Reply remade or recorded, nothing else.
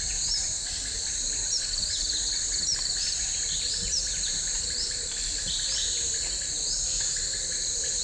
remade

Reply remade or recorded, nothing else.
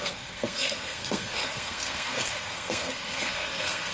remade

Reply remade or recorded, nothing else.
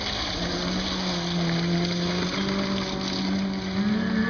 recorded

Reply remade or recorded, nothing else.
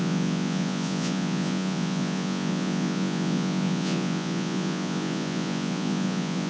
remade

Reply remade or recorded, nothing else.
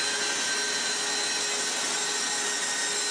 recorded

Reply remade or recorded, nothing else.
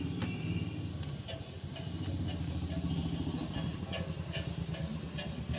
recorded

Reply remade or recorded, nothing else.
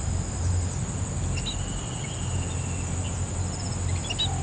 recorded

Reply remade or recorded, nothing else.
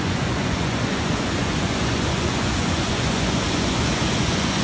remade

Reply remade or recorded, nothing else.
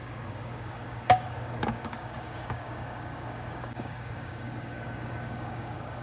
remade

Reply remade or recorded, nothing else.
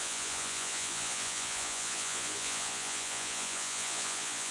remade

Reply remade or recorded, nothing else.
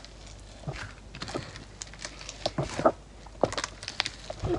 recorded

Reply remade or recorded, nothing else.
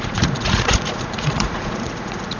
remade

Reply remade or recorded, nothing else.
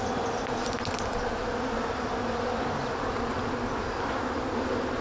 recorded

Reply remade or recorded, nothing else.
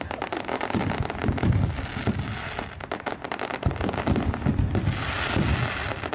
recorded